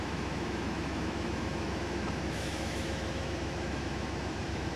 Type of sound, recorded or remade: remade